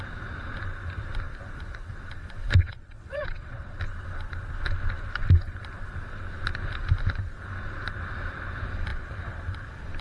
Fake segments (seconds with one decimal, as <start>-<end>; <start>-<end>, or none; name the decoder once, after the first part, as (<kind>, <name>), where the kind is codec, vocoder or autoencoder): 2.6-3.8 (vocoder, WaveNeXt)